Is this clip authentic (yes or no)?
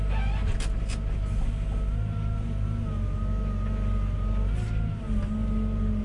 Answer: yes